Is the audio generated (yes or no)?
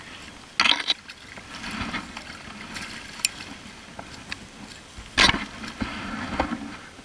no